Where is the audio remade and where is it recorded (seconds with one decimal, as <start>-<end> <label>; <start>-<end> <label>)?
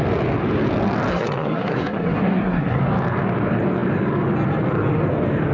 0.0-1.1 recorded; 1.1-2.8 remade; 2.8-5.5 recorded